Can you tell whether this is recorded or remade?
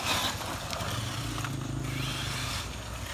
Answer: recorded